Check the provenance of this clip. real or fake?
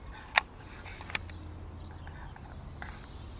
real